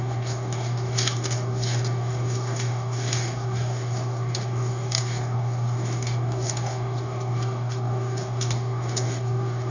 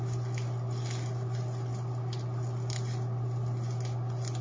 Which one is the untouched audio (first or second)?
second